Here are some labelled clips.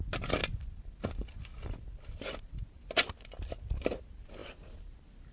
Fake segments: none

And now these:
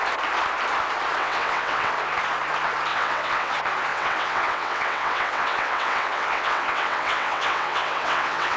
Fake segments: 1.2-1.9 (vocoder, WaveNeXt); 2.9-3.5; 3.9-8.6